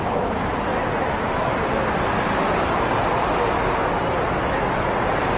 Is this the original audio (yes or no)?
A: yes